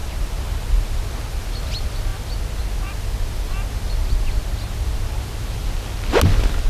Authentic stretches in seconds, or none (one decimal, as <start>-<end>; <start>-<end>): 0.0-6.7